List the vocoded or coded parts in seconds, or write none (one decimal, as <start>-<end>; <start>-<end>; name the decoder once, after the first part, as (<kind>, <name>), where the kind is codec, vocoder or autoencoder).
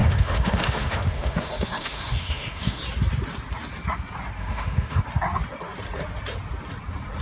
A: 0.0-2.8 (autoencoder, DAC-VAE); 4.4-5.0